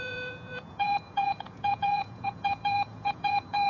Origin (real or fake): fake